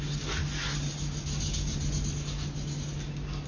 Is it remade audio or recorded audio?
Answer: recorded